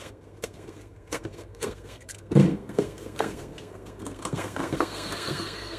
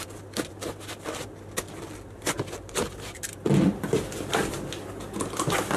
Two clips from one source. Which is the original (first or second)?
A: second